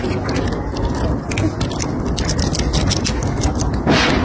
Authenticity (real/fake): real